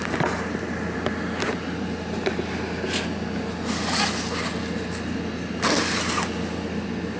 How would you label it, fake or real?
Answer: real